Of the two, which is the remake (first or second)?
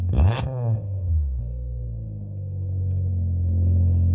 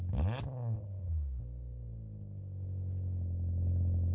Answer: first